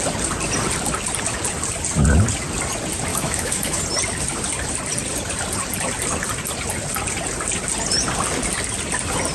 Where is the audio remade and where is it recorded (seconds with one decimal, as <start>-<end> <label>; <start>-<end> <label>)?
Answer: 0.0-3.1 recorded; 3.1-3.8 remade; 3.8-9.3 recorded